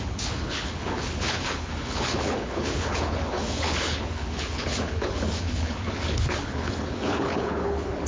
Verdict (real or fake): fake